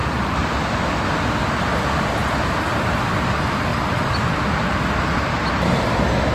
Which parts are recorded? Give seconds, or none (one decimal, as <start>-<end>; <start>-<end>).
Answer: 0.0-6.3